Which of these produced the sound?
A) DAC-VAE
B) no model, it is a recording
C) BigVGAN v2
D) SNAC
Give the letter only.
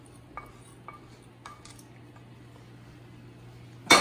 B